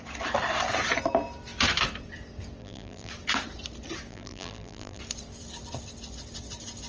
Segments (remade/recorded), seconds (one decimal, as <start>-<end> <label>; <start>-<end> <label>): 0.0-2.6 recorded; 2.6-3.1 remade; 3.1-4.1 recorded; 4.1-5.0 remade; 5.0-6.9 recorded